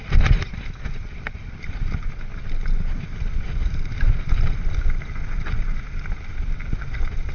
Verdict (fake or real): real